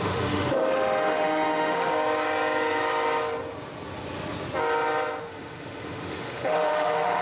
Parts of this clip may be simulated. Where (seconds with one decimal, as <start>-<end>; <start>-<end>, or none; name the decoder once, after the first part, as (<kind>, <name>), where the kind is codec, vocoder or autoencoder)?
0.0-1.9 (autoencoder, DAC-VAE); 5.2-7.2